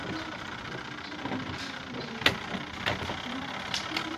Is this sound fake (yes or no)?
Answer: no